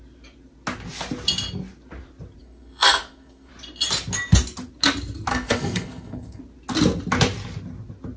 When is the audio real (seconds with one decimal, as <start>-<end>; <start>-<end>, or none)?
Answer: 0.0-2.4; 3.5-5.3; 6.4-8.2

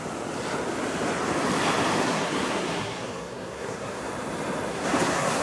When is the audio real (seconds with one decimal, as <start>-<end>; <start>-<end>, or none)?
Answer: 0.0-2.0; 4.0-4.7

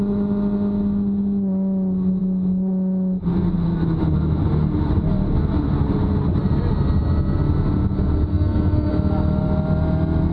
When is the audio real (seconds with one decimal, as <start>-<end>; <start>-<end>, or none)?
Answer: 0.0-8.3; 8.9-10.3

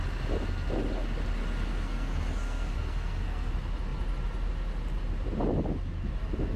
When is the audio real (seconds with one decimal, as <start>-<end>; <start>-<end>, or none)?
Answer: 0.0-1.7; 3.5-6.6

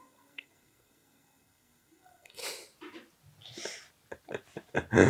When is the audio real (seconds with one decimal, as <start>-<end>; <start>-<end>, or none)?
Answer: 2.4-5.1

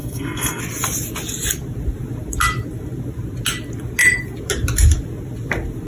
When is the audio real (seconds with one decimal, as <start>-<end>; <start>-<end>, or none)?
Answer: 0.6-5.9

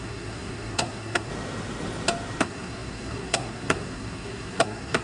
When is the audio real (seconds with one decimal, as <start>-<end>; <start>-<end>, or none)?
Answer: 1.3-2.4